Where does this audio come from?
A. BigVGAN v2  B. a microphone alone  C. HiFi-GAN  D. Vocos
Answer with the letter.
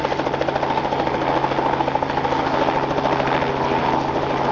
B